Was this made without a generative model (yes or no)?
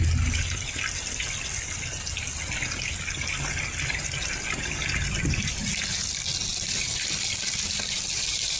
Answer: yes